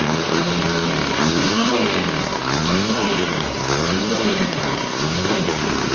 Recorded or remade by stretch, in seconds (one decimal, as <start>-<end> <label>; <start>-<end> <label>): 0.0-0.5 remade; 0.5-1.1 recorded; 1.1-1.7 remade; 1.7-2.2 recorded; 2.2-5.9 remade